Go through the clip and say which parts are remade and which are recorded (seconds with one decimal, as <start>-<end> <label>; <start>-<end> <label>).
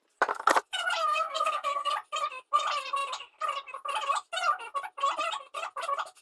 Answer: 0.0-1.0 recorded; 1.0-1.9 remade; 1.9-6.2 recorded